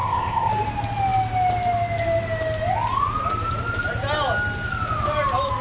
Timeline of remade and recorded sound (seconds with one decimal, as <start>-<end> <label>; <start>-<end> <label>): 0.0-0.5 remade; 0.5-5.6 recorded